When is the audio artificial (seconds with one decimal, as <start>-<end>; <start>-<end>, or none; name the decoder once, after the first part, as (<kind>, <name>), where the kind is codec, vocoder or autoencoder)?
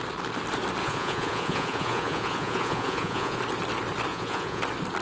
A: 0.8-3.4 (vocoder, Vocos); 4.1-4.6